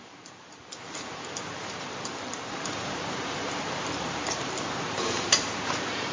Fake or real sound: fake